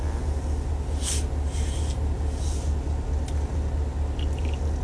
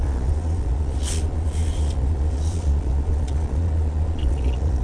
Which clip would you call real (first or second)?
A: first